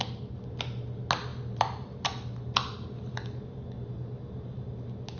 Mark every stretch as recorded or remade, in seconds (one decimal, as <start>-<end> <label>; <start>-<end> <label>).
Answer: 0.0-1.3 recorded; 1.3-3.4 remade; 3.4-5.2 recorded